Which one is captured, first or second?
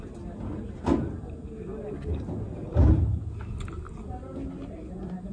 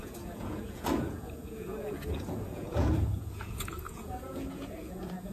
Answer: first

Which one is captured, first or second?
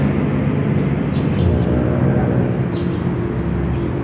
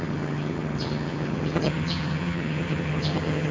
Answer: first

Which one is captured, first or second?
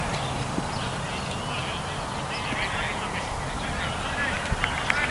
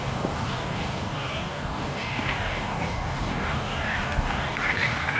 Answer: first